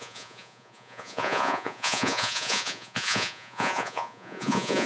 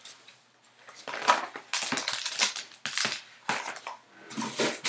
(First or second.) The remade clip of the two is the first